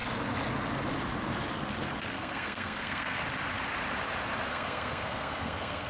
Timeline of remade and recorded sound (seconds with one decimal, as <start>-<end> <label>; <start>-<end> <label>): 0.0-2.1 recorded; 2.1-3.2 remade; 3.2-4.5 recorded; 4.5-5.9 remade